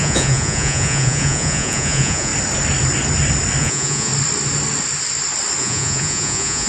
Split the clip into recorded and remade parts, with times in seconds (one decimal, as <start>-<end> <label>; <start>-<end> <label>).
0.0-2.3 remade; 2.3-3.6 recorded; 3.6-4.1 remade; 4.1-5.6 recorded; 5.6-6.7 remade